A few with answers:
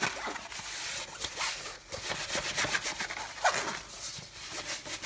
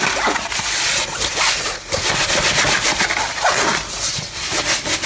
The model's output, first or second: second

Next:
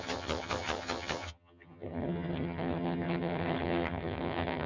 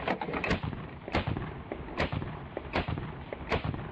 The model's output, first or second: first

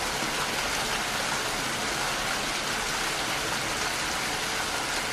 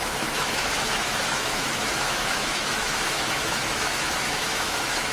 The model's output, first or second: second